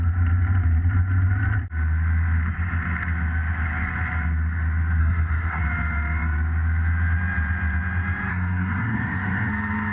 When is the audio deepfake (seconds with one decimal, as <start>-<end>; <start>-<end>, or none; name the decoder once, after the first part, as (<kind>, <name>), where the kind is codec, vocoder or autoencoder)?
5.0-5.6 (codec, SNAC); 8.3-9.5

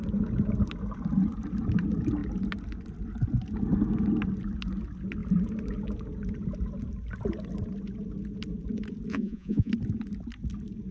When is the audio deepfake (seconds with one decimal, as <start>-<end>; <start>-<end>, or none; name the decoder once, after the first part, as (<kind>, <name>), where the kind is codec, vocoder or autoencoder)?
9.1-9.7 (vocoder, Vocos)

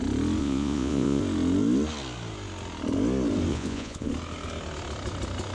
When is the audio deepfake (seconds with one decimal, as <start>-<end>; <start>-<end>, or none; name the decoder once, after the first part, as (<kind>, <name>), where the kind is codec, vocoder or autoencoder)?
0.4-1.2 (vocoder, Vocos); 3.5-4.1

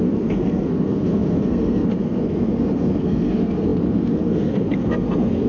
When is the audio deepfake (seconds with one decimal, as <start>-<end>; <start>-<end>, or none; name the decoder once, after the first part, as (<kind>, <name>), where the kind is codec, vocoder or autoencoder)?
0.0-5.5 (codec, SNAC)

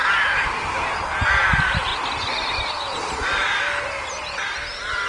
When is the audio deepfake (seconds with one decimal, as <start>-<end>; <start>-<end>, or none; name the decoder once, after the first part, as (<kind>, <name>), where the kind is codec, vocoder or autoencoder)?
none

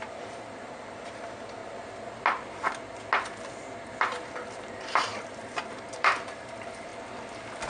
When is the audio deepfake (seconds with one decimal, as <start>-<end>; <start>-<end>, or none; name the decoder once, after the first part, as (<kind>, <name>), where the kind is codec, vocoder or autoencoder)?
0.0-1.6 (vocoder, BigVGAN v2); 4.3-6.9

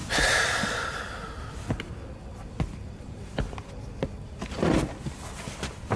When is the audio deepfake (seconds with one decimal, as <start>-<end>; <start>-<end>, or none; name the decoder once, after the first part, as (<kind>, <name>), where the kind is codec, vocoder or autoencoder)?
none

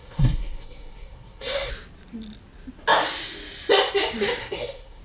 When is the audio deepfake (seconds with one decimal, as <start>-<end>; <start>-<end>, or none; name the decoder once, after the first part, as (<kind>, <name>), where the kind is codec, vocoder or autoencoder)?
0.0-1.7 (codec, SNAC); 4.4-5.0